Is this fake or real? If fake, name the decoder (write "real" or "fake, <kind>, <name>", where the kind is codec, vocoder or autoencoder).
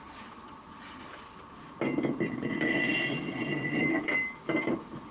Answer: fake, vocoder, BigVGAN v2